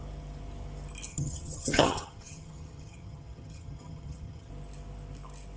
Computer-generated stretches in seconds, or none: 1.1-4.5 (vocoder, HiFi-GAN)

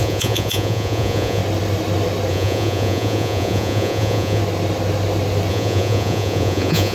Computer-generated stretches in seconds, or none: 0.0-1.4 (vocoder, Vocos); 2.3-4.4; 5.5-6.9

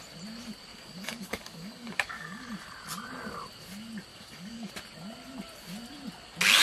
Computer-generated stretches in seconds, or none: 0.7-2.5 (codec, DAC); 4.1-4.7

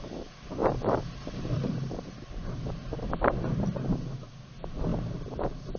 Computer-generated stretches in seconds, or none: 0.6-3.0 (vocoder, BigVGAN v2); 4.9-5.8